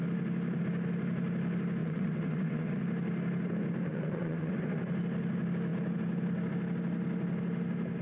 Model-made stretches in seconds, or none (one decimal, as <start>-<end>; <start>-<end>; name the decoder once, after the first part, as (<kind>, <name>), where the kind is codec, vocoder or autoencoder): 1.8-2.8 (vocoder, WaveNeXt); 3.9-4.8